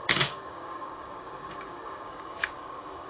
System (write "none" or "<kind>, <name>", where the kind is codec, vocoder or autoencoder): codec, DAC